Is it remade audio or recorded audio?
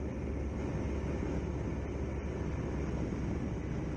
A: recorded